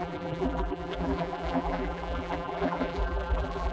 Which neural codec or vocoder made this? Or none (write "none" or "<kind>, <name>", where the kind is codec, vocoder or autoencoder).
vocoder, BigVGAN v2